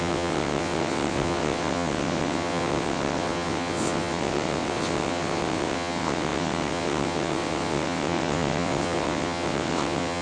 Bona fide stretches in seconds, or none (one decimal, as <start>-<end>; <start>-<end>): none